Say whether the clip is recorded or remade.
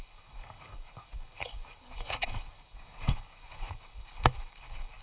remade